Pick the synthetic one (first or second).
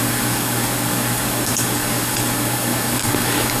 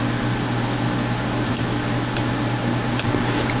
first